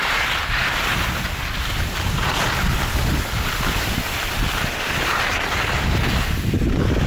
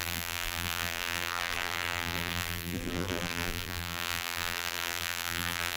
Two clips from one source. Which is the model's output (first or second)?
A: second